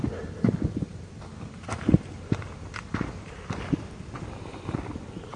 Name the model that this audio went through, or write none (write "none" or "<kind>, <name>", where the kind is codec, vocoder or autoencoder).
none